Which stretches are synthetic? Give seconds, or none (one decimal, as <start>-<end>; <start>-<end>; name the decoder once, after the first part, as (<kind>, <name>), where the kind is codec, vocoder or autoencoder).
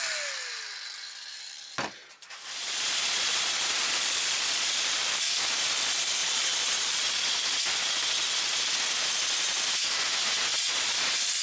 2.6-4.7 (vocoder, Vocos); 6.2-7.6; 10.5-11.4